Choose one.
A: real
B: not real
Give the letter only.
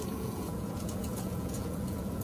B